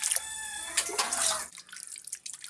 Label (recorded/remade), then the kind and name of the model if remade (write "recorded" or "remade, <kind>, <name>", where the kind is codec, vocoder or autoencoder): recorded